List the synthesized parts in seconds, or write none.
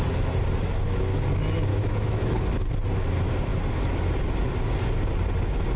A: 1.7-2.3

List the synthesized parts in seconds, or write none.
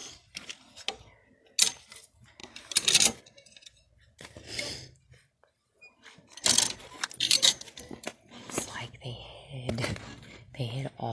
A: 0.0-0.5; 2.4-3.2; 4.7-5.4; 6.8-8.8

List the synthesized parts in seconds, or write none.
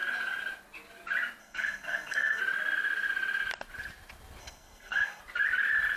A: 1.4-2.4; 4.4-5.2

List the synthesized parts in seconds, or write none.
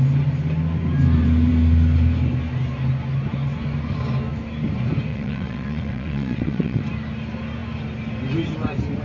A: 5.1-6.8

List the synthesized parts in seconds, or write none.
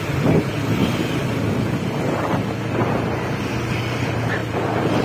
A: none